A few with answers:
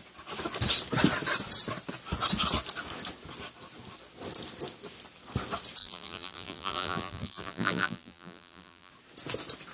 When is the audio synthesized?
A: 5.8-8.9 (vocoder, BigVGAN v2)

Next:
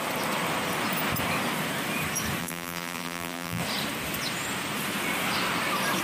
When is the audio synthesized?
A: 2.4-3.6 (vocoder, BigVGAN v2)

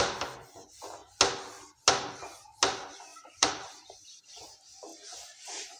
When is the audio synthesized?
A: 3.1-4.2 (vocoder, BigVGAN v2); 4.9-5.8

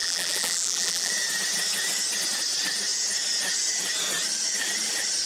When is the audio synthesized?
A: 0.0-1.1 (vocoder, BigVGAN v2)

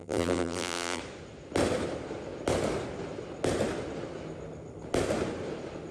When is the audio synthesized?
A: 0.0-1.0 (vocoder, BigVGAN v2)